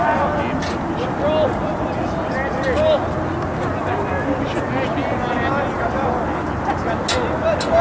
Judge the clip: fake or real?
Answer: real